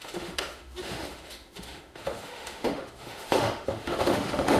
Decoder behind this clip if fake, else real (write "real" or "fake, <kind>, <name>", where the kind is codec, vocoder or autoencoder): fake, autoencoder, DAC-VAE